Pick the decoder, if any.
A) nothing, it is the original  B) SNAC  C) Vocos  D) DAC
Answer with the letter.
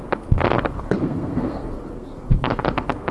B